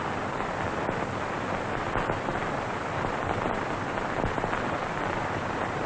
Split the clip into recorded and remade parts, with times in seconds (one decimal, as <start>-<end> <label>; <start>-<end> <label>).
0.0-5.9 recorded